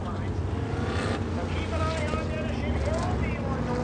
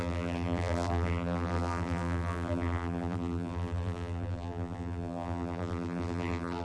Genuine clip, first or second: first